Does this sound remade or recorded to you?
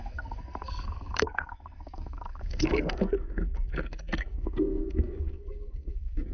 remade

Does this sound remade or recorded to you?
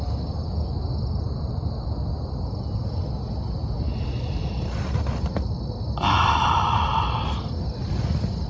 recorded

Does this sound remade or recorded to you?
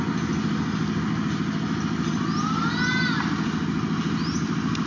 recorded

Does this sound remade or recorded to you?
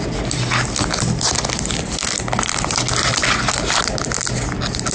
recorded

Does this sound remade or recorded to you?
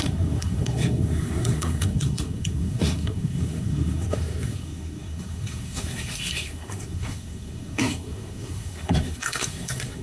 remade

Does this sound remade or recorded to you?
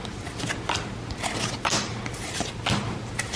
recorded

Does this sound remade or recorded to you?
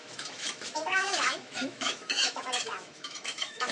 remade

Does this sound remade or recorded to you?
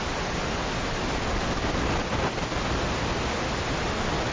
recorded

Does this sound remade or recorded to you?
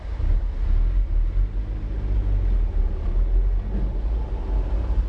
recorded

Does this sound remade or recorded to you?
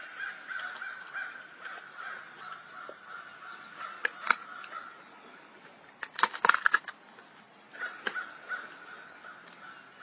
recorded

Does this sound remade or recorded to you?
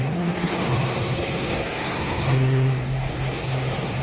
remade